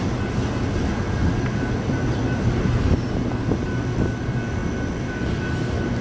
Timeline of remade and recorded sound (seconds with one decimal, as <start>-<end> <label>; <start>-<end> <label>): 0.0-6.0 recorded

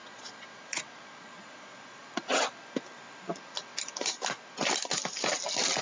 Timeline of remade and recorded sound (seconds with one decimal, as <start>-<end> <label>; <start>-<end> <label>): 0.0-2.1 remade; 2.1-5.8 recorded

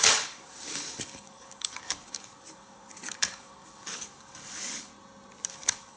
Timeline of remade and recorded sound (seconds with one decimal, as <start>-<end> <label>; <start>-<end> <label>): 0.0-4.9 remade; 4.9-5.5 recorded; 5.5-6.0 remade

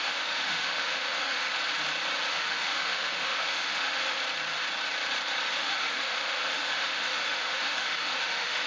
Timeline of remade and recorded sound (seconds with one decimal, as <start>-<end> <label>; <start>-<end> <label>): 0.0-1.4 remade; 1.4-2.3 recorded; 2.3-4.2 remade; 4.2-5.5 recorded; 5.5-8.7 remade

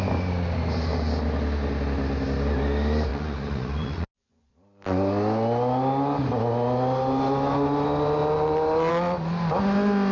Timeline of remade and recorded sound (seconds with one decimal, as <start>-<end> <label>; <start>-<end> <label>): 0.0-3.1 recorded; 3.1-4.5 remade; 4.5-10.1 recorded

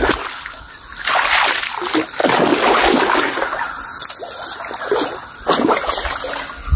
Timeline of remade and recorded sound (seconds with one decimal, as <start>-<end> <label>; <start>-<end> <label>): 0.0-6.8 recorded